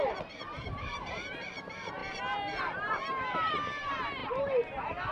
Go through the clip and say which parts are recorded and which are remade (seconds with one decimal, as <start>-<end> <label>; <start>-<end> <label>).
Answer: 0.0-5.1 remade